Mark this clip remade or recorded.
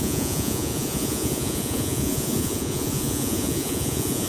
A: remade